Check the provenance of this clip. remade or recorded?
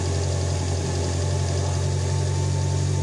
recorded